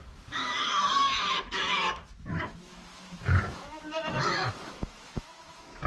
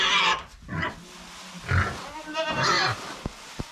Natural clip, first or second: second